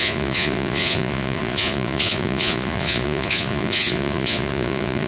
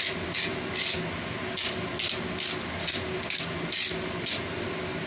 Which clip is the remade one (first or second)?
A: first